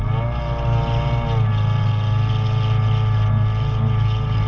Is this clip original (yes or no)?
yes